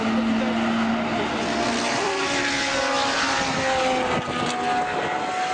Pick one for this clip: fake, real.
real